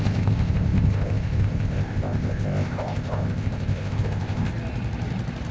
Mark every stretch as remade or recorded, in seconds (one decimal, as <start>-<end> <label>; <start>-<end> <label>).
0.0-4.5 remade; 4.5-5.5 recorded